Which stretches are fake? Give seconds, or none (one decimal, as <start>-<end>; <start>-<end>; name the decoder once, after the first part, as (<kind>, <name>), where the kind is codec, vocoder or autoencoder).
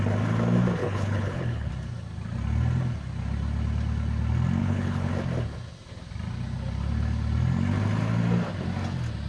0.8-1.7 (codec, HILCodec); 4.6-5.1